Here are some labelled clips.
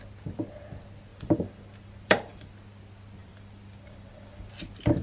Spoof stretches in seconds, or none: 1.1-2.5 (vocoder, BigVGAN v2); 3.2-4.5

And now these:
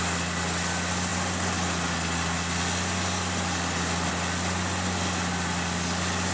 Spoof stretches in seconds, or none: none

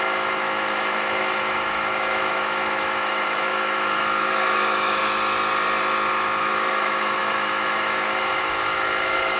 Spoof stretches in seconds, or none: 0.0-5.0 (autoencoder, DAC-VAE); 6.4-9.4

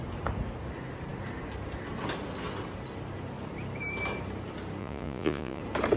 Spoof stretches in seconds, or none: 4.8-5.6 (vocoder, Vocos)

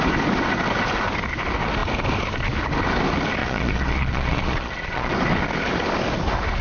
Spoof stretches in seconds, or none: 3.4-5.1 (vocoder, Vocos)

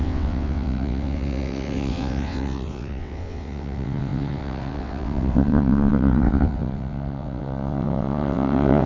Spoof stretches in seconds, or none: 0.0-8.9 (vocoder, WaveNeXt)

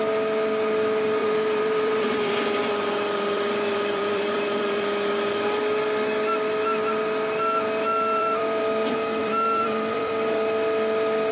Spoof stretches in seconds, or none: 1.2-4.8 (vocoder, BigVGAN v2); 8.1-8.6; 9.2-10.1

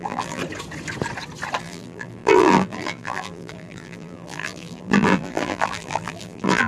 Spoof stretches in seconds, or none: 0.0-0.4 (vocoder, BigVGAN v2); 1.6-6.7